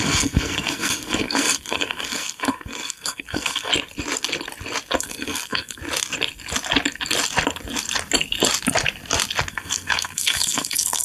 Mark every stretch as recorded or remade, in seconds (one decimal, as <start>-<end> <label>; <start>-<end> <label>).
0.0-3.7 remade; 3.7-5.0 recorded; 5.0-5.8 remade; 5.8-9.5 recorded; 9.5-11.0 remade